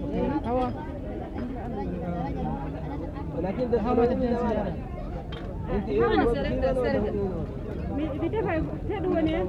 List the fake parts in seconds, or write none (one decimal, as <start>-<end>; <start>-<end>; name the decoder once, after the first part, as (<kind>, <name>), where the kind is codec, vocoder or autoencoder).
none